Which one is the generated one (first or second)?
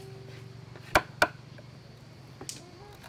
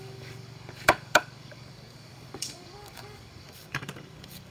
second